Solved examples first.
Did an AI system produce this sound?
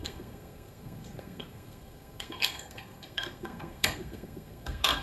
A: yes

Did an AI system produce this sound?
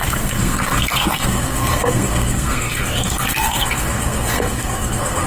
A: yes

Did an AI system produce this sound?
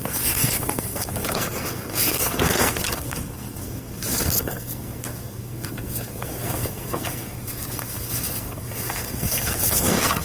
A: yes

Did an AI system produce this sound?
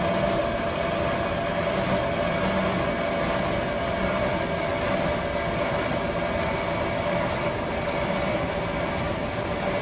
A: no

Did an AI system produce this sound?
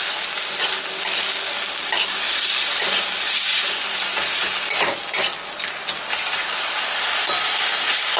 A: no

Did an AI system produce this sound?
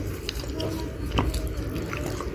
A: no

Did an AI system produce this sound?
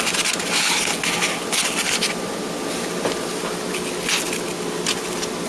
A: no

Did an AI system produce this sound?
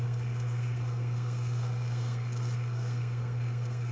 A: yes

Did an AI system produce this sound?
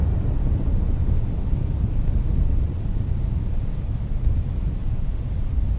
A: no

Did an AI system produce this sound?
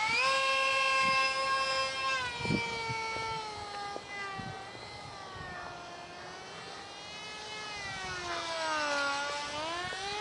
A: no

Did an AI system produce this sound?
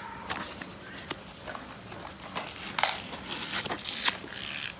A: no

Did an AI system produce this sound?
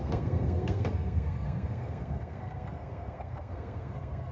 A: yes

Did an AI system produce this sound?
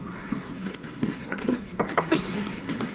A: yes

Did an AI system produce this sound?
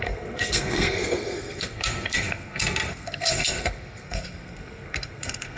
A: yes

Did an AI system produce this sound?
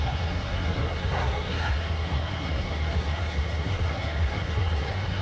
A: yes